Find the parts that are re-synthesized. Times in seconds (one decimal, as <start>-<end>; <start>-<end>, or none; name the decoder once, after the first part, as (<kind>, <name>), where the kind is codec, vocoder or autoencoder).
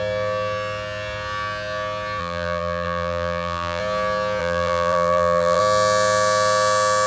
2.2-3.8 (vocoder, BigVGAN v2); 4.4-5.6